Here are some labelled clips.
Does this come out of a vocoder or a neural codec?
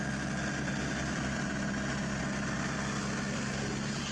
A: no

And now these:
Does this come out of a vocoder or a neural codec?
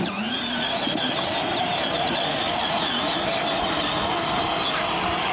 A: no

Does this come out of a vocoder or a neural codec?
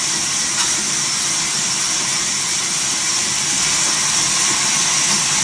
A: no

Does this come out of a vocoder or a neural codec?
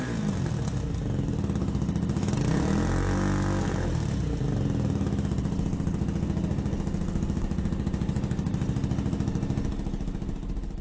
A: no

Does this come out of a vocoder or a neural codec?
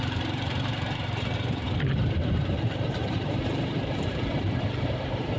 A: yes